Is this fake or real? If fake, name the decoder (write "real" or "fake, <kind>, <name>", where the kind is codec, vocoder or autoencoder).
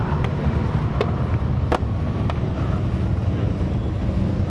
real